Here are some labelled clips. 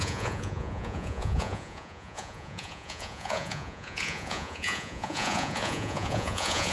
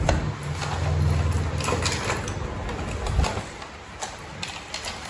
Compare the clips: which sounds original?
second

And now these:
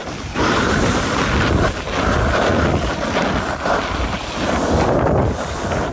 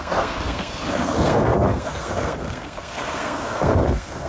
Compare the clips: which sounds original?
first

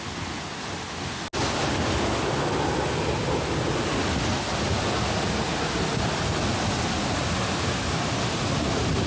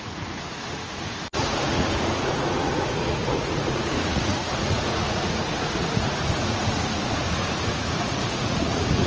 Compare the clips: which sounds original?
first